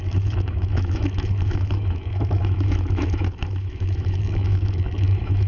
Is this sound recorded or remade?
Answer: remade